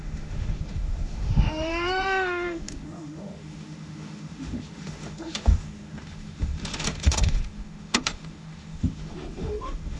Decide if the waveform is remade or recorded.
remade